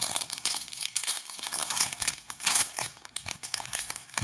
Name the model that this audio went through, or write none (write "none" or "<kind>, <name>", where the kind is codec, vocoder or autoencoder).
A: codec, SNAC